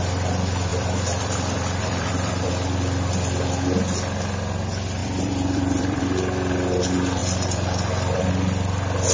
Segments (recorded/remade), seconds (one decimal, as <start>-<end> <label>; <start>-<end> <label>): 0.0-0.7 recorded; 0.7-2.5 remade; 2.5-5.0 recorded; 5.0-6.0 remade; 6.0-7.2 recorded; 7.2-8.3 remade; 8.3-9.1 recorded

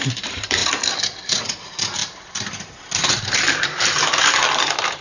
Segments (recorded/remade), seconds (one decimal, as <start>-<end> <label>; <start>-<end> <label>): 0.0-0.6 remade; 0.6-1.3 recorded; 1.3-5.0 remade

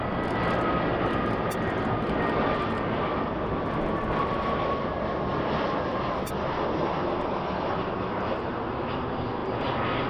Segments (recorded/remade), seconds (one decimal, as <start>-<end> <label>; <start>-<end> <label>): 0.0-10.1 recorded

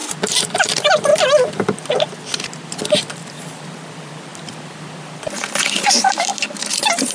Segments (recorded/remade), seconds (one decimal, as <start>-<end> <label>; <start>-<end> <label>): 0.0-0.7 recorded; 0.7-1.1 remade; 1.1-2.8 recorded; 2.8-4.3 remade; 4.3-5.8 recorded; 5.8-7.1 remade

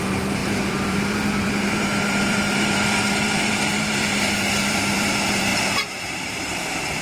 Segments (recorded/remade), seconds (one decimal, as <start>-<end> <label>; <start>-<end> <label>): 0.0-7.0 remade

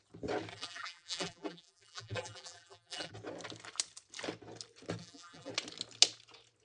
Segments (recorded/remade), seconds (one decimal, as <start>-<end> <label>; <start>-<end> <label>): 0.0-0.5 recorded; 0.5-3.1 remade; 3.1-5.0 recorded; 5.0-5.5 remade; 5.5-6.6 recorded

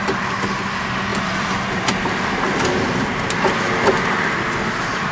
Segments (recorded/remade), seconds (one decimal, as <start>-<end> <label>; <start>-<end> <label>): 0.0-1.1 recorded; 1.1-4.2 remade; 4.2-5.1 recorded